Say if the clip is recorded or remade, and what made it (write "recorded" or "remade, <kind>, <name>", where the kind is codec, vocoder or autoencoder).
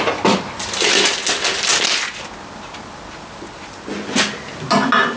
recorded